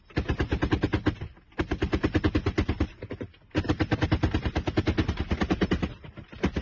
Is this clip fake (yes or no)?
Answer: no